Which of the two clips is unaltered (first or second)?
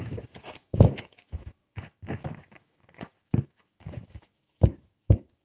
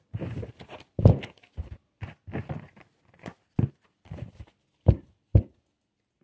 second